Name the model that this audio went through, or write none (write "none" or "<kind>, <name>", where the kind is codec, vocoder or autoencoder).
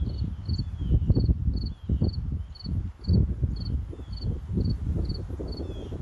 none